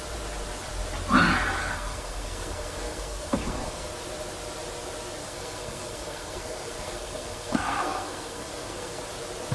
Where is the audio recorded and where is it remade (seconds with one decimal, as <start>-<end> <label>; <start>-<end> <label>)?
0.0-1.6 recorded; 1.6-3.9 remade; 3.9-5.2 recorded; 5.2-9.0 remade; 9.0-9.5 recorded